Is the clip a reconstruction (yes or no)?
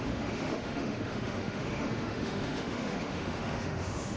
yes